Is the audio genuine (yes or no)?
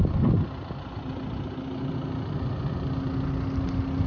yes